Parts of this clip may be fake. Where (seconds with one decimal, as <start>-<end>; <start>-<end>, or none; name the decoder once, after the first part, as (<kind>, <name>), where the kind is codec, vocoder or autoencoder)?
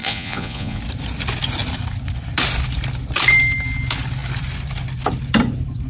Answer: 0.0-0.8 (vocoder, Vocos)